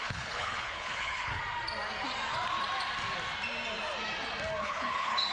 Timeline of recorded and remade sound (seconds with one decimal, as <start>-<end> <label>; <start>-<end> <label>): 0.0-1.4 remade; 1.4-4.6 recorded; 4.6-5.3 remade